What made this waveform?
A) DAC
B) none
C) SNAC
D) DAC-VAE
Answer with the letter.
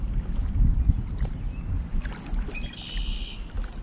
B